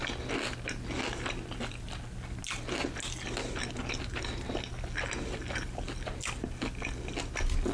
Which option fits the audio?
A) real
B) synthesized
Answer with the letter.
A